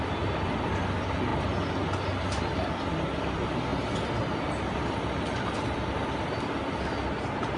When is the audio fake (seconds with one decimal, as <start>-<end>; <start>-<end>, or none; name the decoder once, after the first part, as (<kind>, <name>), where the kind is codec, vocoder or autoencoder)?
none